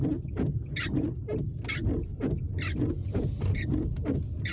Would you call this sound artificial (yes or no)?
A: no